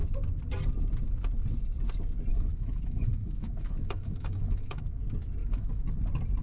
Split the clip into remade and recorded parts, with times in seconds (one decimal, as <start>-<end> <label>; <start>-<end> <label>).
0.0-2.3 recorded; 2.3-5.0 remade; 5.0-5.4 recorded; 5.4-6.0 remade; 6.0-6.4 recorded